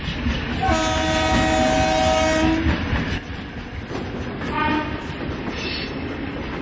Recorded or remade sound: recorded